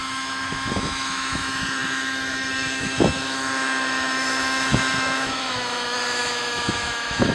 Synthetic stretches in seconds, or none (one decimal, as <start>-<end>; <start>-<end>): 0.0-7.3